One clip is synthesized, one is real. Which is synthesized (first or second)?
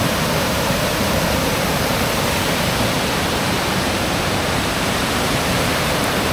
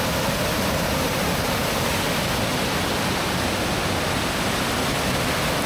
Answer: first